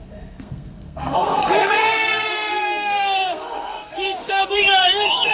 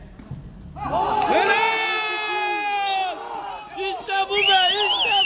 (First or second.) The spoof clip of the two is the first